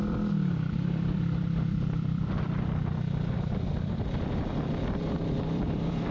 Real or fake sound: fake